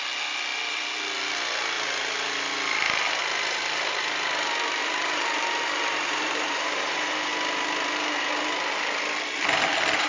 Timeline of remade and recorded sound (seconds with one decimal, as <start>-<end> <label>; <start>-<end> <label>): 0.0-4.8 recorded; 4.8-7.3 remade; 7.3-10.1 recorded